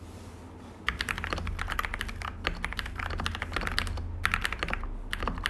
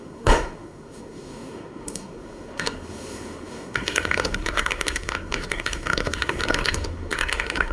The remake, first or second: second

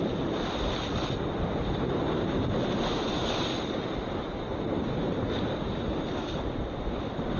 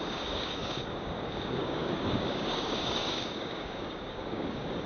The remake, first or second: second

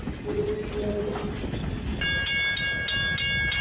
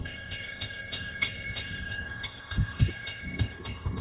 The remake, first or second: second